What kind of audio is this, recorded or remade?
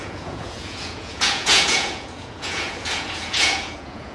remade